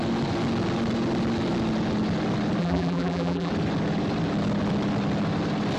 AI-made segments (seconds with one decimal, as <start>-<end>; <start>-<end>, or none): 2.6-3.5